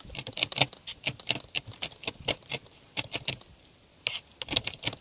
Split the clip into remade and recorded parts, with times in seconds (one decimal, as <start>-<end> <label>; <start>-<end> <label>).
0.0-5.0 recorded